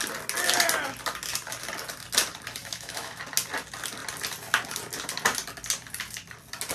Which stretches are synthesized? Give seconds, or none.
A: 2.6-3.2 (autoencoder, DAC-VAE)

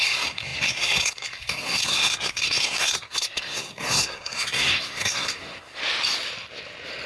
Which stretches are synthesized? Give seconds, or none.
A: 0.0-5.8 (codec, SNAC)